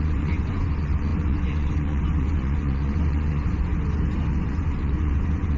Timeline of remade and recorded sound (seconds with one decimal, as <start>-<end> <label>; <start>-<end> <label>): 0.0-3.7 remade; 3.7-4.3 recorded; 4.3-5.6 remade